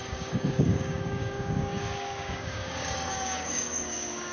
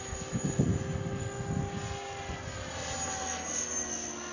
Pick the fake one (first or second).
first